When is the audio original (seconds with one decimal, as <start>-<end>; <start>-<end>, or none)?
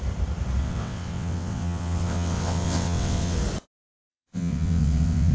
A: 0.0-0.6; 3.4-4.1